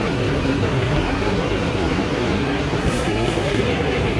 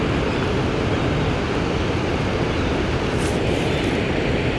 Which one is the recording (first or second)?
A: second